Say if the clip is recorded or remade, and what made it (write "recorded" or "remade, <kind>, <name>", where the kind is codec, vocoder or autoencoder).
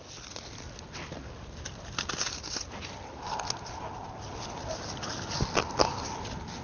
recorded